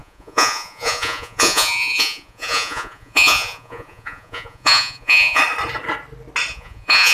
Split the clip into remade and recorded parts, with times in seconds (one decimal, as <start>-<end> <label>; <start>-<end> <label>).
0.0-5.4 remade; 5.4-6.5 recorded; 6.5-7.1 remade